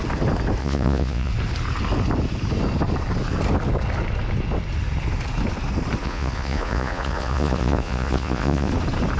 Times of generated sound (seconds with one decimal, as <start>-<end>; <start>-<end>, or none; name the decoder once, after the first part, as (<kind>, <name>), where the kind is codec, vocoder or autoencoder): 0.6-1.3 (vocoder, Vocos); 6.0-8.7